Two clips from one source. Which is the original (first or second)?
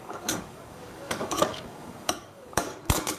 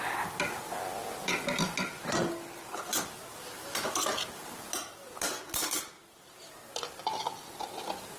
second